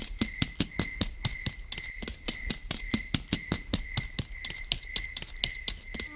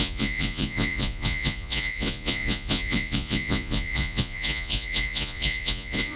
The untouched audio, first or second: first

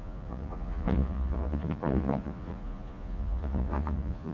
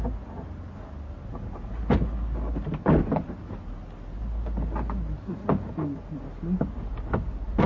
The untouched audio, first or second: second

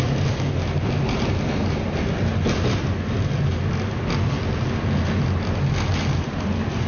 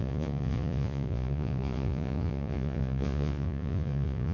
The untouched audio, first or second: first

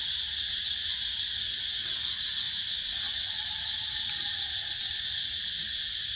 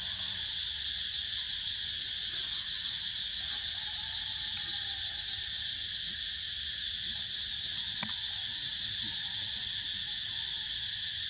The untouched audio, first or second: second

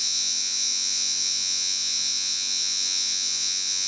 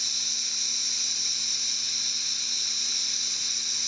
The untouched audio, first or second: second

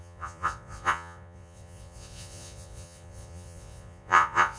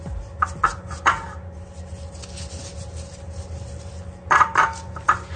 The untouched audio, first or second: second